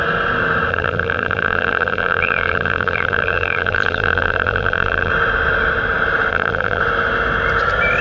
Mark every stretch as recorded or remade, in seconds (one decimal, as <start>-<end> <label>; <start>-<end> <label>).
0.0-0.7 recorded; 0.7-5.1 remade; 5.1-6.3 recorded; 6.3-6.8 remade; 6.8-8.0 recorded